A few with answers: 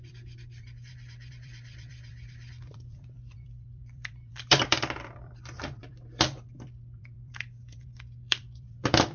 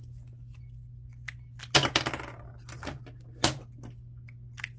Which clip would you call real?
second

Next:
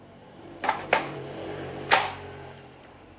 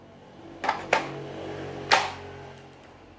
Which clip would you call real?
second